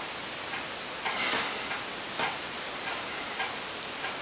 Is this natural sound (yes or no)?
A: yes